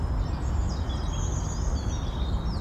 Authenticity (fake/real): real